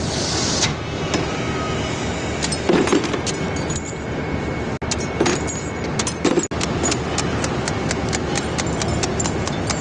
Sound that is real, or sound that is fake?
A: real